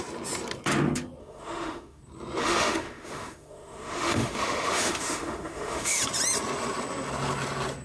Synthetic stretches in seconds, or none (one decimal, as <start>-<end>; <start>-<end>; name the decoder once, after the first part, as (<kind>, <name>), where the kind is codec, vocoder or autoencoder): 1.2-2.0 (autoencoder, DAC-VAE); 2.4-6.0